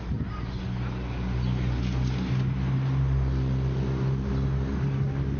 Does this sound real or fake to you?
real